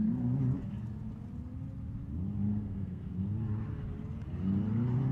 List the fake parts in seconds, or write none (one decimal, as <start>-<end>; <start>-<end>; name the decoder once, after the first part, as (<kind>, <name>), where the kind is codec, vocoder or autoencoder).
2.5-3.1 (codec, SNAC)